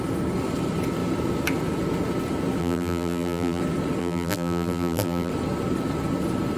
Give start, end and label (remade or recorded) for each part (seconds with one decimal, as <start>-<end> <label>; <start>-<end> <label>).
0.0-2.6 recorded; 2.6-3.6 remade; 3.6-4.0 recorded; 4.0-5.3 remade; 5.3-6.6 recorded